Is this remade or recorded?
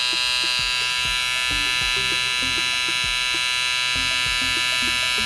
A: recorded